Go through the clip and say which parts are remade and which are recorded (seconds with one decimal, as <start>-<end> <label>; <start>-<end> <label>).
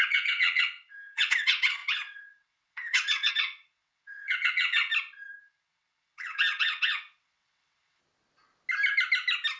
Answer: 0.0-4.9 remade; 4.9-5.4 recorded; 5.4-8.0 remade; 8.0-9.6 recorded